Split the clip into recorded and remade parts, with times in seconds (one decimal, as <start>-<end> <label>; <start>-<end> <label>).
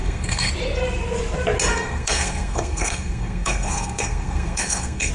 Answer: 0.0-0.5 remade; 0.5-1.7 recorded; 1.7-5.1 remade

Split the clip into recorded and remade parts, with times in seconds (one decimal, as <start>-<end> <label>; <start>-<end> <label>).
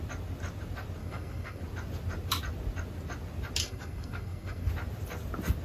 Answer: 0.0-1.0 recorded; 1.0-1.6 remade; 1.6-3.6 recorded; 3.6-4.7 remade; 4.7-5.6 recorded